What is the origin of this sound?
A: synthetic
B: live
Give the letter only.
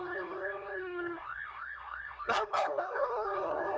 A